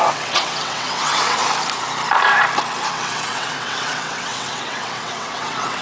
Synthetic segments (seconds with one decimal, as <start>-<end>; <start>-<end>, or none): 0.0-1.4; 2.9-5.8